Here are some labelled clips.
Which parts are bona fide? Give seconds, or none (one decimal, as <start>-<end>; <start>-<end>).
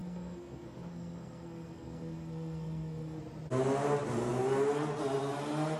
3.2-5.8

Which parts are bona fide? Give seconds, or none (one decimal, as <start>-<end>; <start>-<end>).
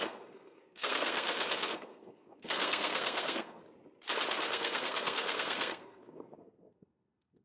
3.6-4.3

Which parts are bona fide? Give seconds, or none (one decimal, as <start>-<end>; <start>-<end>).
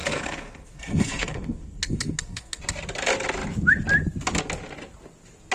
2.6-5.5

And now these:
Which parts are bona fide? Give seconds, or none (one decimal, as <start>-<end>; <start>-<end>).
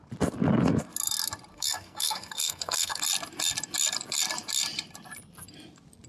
0.0-1.5; 3.0-6.1